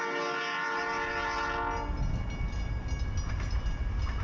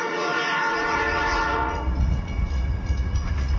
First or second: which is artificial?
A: second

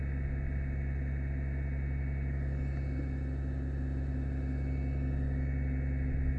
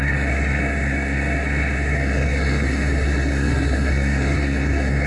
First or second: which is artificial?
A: second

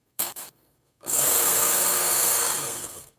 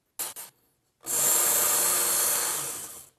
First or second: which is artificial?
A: first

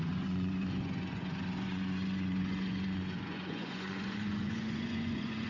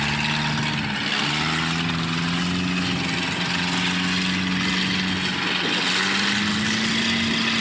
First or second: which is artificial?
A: first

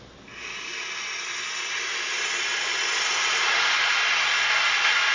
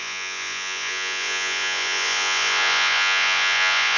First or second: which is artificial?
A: second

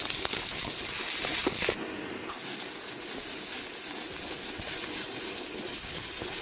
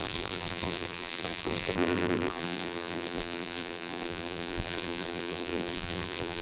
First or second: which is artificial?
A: second